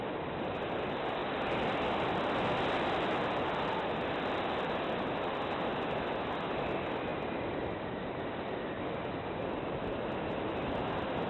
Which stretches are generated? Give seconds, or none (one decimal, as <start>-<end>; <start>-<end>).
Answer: none